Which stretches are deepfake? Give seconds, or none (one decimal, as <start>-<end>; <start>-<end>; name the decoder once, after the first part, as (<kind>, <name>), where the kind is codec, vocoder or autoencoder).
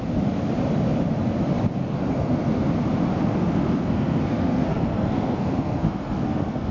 1.8-2.7 (codec, SNAC); 3.4-6.7